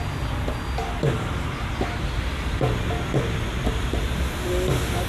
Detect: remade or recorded recorded